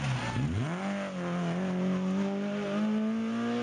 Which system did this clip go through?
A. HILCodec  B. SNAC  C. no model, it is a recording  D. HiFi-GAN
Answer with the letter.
C